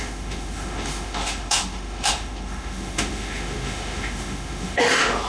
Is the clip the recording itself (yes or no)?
no